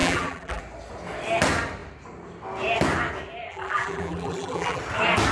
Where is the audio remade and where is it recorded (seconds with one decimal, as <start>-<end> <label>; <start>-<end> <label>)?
0.0-0.6 remade; 0.6-3.5 recorded; 3.5-4.8 remade; 4.8-5.3 recorded